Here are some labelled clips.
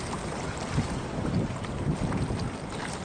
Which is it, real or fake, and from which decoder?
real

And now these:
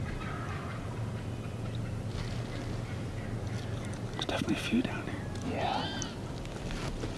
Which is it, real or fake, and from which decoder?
real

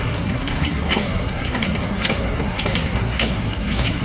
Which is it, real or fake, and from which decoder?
fake, codec, SNAC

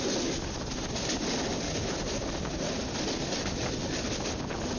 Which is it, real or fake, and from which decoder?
real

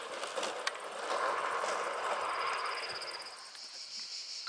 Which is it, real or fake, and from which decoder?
real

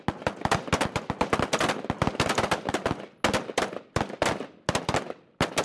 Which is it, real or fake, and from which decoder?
real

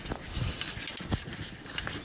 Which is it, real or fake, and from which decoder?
real